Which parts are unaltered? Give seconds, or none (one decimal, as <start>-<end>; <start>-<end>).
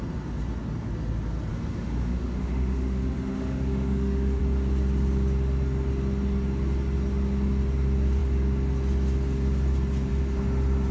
0.0-1.5; 4.4-10.9